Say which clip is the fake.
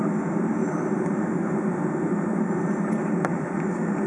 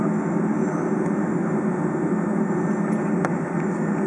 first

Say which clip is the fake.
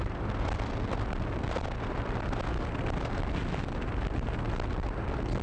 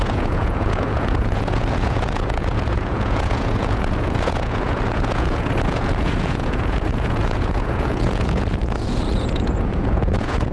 second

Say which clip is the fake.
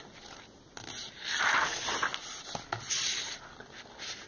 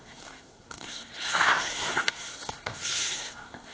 second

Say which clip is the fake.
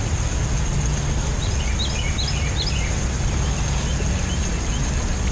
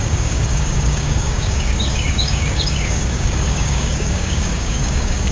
second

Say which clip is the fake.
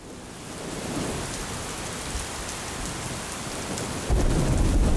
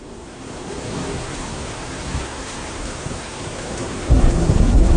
second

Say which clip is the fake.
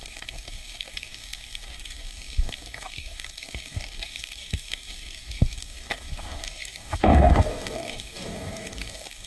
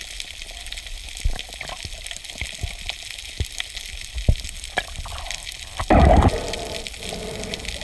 first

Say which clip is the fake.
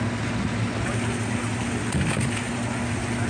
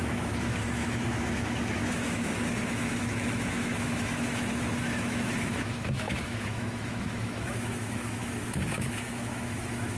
second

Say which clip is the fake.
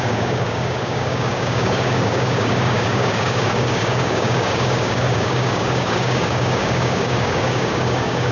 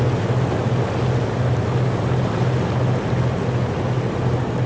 first